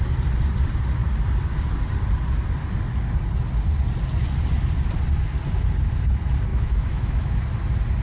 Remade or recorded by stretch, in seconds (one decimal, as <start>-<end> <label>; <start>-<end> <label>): 0.0-6.5 recorded; 6.5-7.4 remade; 7.4-8.0 recorded